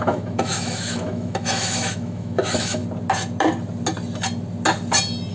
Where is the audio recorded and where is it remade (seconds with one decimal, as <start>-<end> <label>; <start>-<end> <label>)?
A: 0.0-2.8 remade; 2.8-5.3 recorded